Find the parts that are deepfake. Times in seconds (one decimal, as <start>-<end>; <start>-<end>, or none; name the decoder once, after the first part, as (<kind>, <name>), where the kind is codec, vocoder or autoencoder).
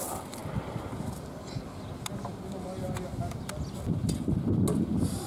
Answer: none